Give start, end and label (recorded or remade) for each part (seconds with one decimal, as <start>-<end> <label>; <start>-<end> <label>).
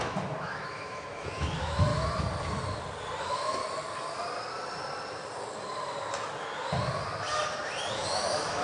0.0-1.9 remade; 1.9-3.2 recorded; 3.2-3.6 remade; 3.6-7.9 recorded; 7.9-8.6 remade